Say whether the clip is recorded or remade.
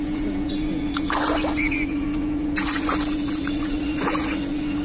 remade